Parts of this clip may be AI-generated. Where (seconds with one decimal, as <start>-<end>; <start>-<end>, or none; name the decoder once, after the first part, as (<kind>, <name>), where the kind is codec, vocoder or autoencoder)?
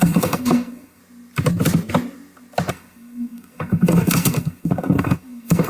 0.0-1.0 (codec, SNAC); 2.7-5.7